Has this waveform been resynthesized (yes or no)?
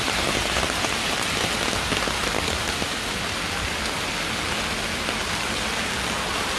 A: no